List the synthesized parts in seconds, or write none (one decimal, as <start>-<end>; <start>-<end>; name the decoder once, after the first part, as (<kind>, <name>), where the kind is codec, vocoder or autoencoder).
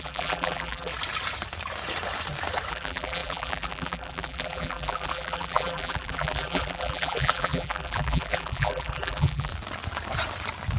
0.0-0.9 (vocoder, BigVGAN v2); 2.7-9.5